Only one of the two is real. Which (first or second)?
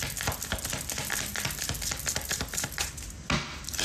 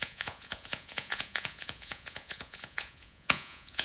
first